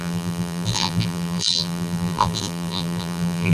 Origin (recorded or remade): remade